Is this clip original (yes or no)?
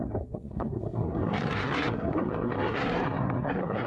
no